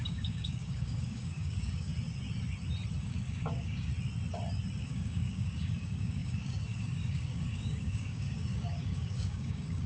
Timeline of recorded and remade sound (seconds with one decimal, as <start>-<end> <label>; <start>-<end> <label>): 0.0-1.9 remade; 1.9-3.0 recorded; 3.0-3.9 remade; 3.9-4.8 recorded; 4.8-9.9 remade